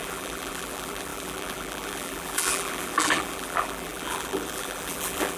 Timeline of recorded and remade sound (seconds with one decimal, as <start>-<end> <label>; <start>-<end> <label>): 0.0-5.4 remade